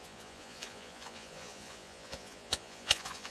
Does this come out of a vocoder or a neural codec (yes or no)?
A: yes